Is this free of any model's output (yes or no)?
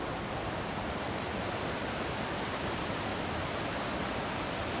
no